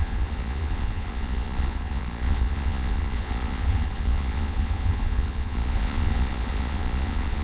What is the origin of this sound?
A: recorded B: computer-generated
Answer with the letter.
B